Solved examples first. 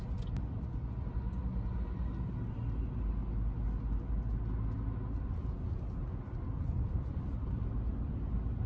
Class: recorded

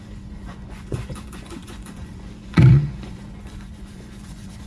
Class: remade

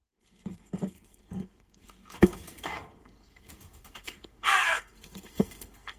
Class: remade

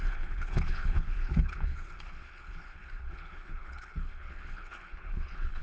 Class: remade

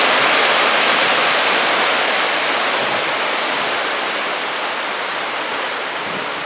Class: recorded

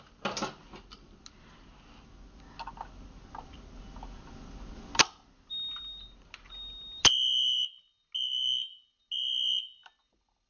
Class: recorded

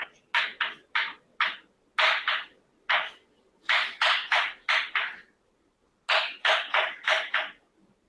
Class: recorded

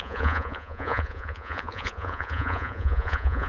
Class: remade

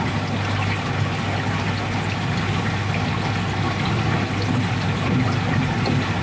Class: recorded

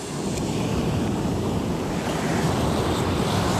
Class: recorded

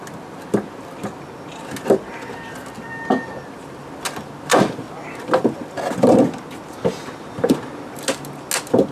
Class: recorded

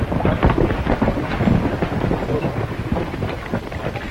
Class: recorded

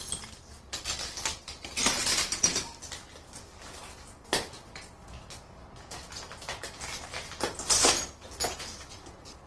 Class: recorded